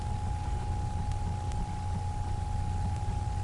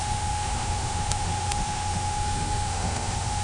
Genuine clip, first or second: first